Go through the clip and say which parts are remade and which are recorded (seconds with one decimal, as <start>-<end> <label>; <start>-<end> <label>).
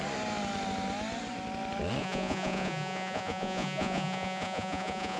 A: 0.0-2.0 recorded; 2.0-5.2 remade